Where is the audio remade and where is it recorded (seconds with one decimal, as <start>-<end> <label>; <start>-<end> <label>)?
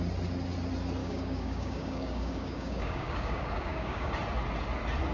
0.0-1.0 recorded; 1.0-4.1 remade; 4.1-5.1 recorded